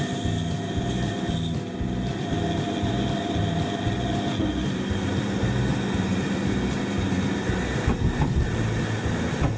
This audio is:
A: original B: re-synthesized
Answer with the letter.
A